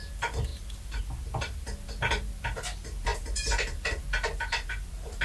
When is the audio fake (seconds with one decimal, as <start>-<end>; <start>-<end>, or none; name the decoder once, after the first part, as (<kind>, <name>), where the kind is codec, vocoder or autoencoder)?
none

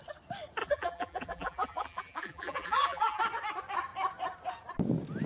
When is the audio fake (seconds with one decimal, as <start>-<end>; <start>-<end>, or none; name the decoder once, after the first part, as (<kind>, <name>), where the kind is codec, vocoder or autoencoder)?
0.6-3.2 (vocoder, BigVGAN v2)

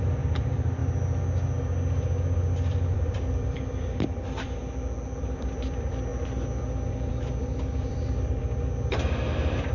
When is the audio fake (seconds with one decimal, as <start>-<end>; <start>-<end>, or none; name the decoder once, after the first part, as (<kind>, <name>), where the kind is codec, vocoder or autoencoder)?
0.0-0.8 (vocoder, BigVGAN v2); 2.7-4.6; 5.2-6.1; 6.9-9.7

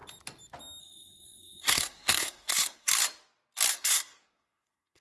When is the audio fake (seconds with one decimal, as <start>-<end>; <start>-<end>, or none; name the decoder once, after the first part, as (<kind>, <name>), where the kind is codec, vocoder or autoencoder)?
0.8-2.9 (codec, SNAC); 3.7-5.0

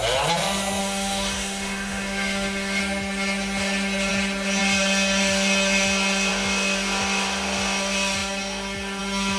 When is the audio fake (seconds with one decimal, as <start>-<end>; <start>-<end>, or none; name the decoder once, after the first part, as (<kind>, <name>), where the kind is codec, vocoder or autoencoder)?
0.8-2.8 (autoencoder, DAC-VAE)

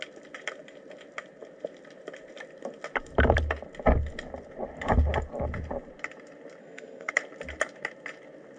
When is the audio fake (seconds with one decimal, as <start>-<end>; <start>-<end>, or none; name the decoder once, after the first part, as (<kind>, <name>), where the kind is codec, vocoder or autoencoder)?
6.6-7.1 (codec, SNAC)

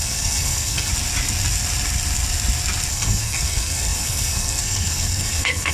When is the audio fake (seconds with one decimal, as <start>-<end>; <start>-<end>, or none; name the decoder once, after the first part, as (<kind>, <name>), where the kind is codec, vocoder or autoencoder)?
0.0-0.9 (codec, SNAC); 2.9-5.7